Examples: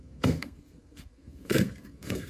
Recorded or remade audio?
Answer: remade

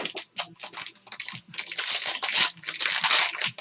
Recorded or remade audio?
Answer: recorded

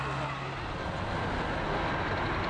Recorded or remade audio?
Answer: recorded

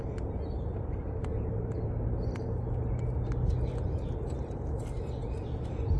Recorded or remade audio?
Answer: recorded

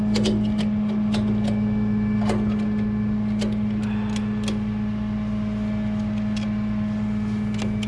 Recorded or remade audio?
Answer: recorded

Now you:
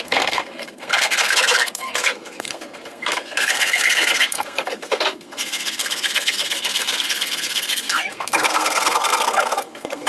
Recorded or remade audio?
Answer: remade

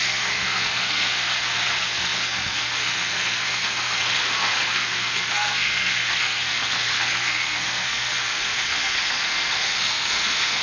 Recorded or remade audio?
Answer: remade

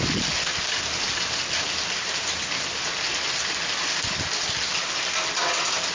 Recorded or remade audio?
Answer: recorded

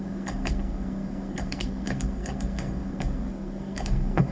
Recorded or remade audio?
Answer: remade